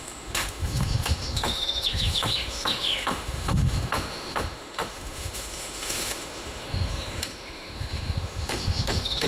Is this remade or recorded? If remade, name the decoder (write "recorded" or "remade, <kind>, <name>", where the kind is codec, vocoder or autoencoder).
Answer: remade, autoencoder, DAC-VAE